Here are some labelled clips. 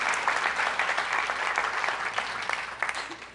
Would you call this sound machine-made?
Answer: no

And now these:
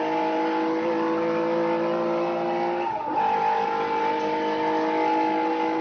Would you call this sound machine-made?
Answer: no